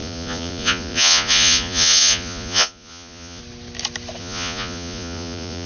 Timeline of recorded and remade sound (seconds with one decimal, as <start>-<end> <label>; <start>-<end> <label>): 0.0-3.4 remade; 3.4-4.2 recorded; 4.2-5.7 remade